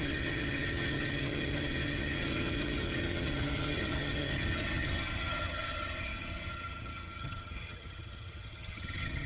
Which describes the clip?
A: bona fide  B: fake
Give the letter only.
B